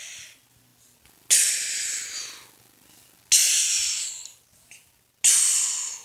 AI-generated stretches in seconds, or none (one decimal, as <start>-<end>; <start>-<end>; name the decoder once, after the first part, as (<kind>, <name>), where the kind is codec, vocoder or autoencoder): none